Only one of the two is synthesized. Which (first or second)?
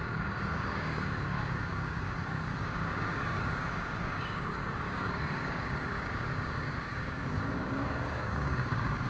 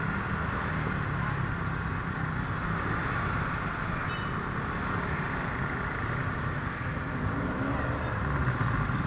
first